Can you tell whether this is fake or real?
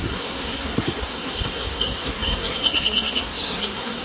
fake